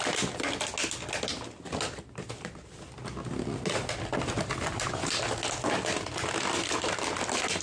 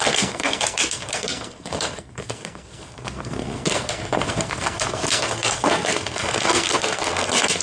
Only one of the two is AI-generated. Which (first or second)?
second